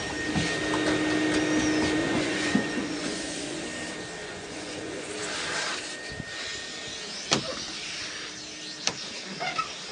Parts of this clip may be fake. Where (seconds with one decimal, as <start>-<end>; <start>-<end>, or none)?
2.0-3.6; 4.2-5.1